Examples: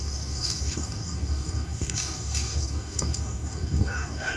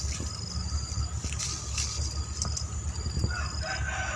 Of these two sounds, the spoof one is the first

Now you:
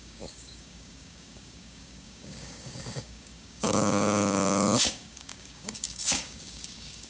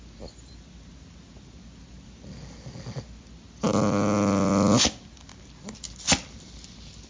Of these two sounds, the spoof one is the first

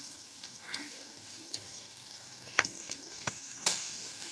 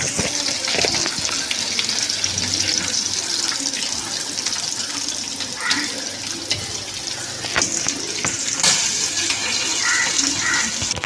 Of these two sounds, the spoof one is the first